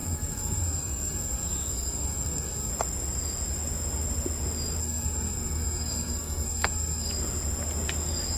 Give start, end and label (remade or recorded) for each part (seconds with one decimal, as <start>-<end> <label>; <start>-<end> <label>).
0.0-2.7 remade; 2.7-4.8 recorded; 4.8-7.1 remade; 7.1-8.4 recorded